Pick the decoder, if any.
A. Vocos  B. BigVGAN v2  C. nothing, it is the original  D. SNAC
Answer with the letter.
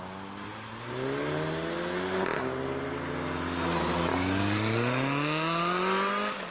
C